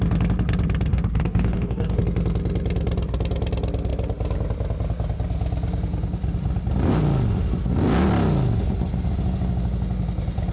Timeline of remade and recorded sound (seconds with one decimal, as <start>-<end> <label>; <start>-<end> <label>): 0.0-0.9 recorded; 0.9-2.0 remade; 2.0-10.5 recorded